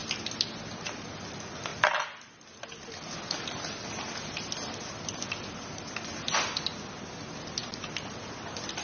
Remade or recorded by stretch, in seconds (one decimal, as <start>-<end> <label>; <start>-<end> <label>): 0.0-8.8 recorded